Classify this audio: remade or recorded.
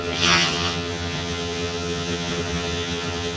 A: remade